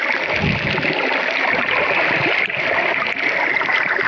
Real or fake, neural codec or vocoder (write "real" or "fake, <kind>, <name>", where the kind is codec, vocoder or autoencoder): real